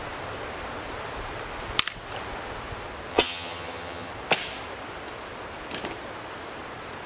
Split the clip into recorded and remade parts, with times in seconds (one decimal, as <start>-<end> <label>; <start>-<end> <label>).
0.0-3.1 recorded; 3.1-4.1 remade; 4.1-7.1 recorded